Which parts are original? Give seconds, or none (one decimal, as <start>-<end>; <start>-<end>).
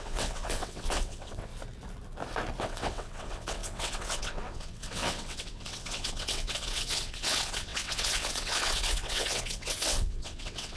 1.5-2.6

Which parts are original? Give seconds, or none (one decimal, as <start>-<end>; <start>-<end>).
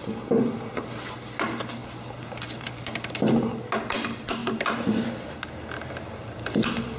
0.0-7.0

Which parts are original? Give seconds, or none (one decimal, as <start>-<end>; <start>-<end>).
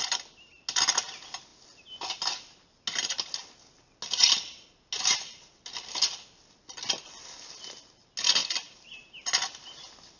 0.0-10.2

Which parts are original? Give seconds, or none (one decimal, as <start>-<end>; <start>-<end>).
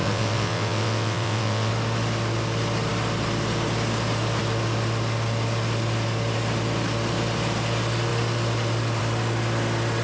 1.7-10.0